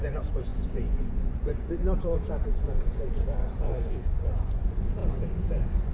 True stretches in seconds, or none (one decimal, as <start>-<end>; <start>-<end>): none